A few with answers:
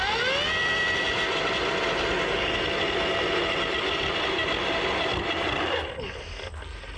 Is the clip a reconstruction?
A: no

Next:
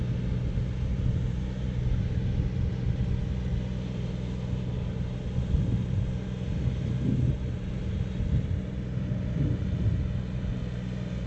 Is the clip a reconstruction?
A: no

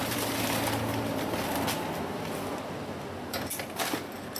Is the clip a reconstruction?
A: no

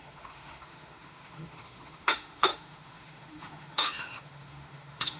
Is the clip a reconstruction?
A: yes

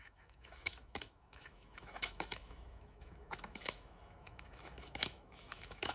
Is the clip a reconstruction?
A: yes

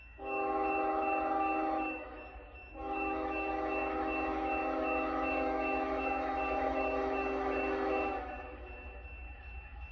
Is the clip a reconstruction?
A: yes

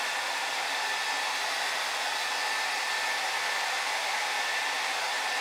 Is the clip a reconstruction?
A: no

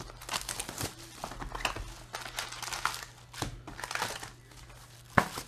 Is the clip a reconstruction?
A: no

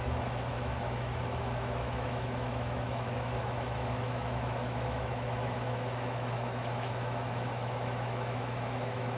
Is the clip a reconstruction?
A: yes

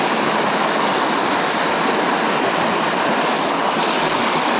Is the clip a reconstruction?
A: no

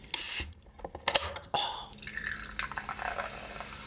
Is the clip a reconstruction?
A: no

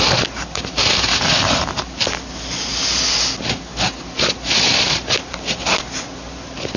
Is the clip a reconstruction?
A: no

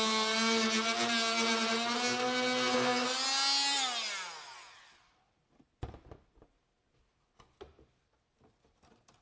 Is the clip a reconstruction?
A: no